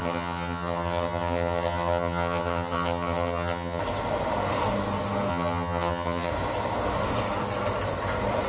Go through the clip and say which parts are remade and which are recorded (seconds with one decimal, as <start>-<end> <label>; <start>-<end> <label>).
0.0-3.8 remade; 3.8-5.3 recorded; 5.3-6.3 remade; 6.3-8.5 recorded